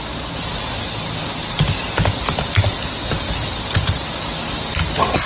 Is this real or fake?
real